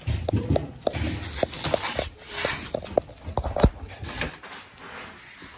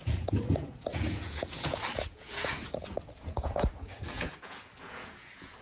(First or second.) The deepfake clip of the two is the second